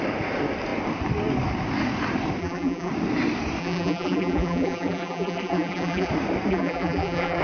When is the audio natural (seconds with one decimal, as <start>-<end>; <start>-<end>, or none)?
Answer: 0.0-2.4; 2.9-3.6; 6.1-6.5